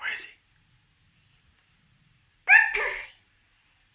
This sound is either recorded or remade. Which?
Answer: recorded